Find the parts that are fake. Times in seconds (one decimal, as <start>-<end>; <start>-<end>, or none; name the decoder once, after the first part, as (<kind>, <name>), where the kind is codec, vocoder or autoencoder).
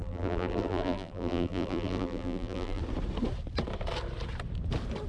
0.0-2.8 (vocoder, BigVGAN v2)